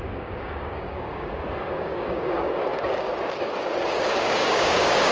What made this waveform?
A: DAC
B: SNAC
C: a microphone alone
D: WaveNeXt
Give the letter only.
A